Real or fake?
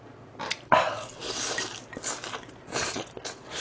real